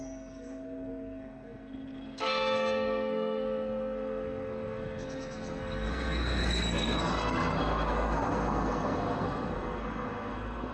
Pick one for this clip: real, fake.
fake